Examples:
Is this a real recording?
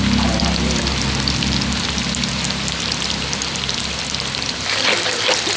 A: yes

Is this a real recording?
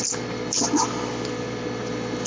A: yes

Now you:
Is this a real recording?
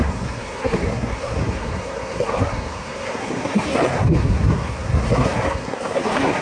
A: no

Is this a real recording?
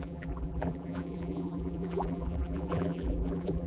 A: no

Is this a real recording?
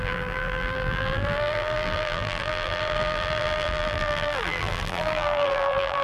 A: no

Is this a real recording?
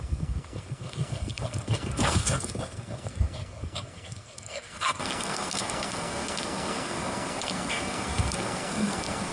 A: no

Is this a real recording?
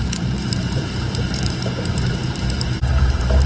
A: no